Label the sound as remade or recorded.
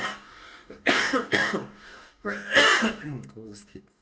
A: remade